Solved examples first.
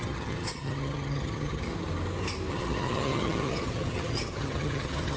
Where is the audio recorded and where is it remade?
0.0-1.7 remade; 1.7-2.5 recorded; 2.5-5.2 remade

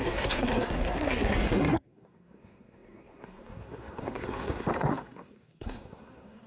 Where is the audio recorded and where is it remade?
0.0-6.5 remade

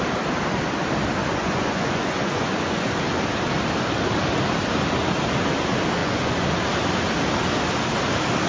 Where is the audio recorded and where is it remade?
0.0-1.2 recorded; 1.2-2.9 remade; 2.9-6.0 recorded; 6.0-6.5 remade; 6.5-8.5 recorded

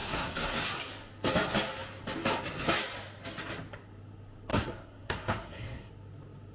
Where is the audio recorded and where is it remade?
0.0-0.6 remade; 0.6-4.5 recorded; 4.5-5.9 remade; 5.9-6.5 recorded

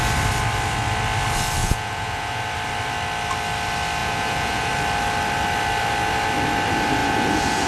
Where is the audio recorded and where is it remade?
0.0-1.6 recorded; 1.6-2.4 remade; 2.4-4.0 recorded; 4.0-4.7 remade; 4.7-7.0 recorded; 7.0-7.7 remade

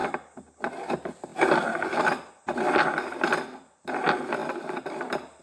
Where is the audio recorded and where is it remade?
0.0-5.4 recorded

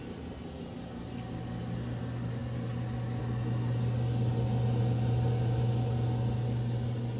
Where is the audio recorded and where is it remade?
0.0-7.2 recorded

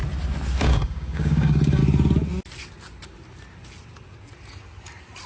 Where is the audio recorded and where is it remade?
0.0-0.6 recorded; 0.6-1.8 remade; 1.8-5.3 recorded